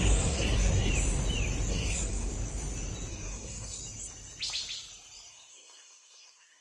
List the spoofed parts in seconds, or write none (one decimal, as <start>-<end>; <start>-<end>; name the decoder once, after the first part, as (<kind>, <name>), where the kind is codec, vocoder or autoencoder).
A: 0.0-0.9 (codec, SNAC); 1.7-2.3; 3.1-3.8; 5.3-6.6